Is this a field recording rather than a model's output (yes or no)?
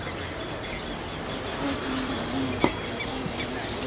yes